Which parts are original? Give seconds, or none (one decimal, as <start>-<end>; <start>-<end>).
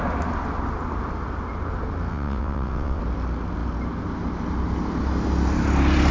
0.0-2.1; 3.0-6.1